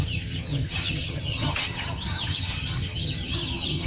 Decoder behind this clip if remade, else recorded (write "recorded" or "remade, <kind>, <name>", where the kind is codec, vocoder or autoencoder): remade, vocoder, HiFi-GAN